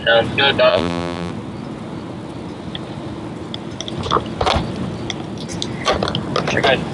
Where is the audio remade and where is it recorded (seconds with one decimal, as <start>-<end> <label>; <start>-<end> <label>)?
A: 0.0-0.7 recorded; 0.7-1.3 remade; 1.3-6.9 recorded